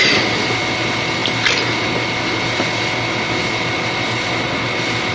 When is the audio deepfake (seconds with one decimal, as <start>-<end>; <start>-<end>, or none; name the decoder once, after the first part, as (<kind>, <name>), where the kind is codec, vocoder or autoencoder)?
none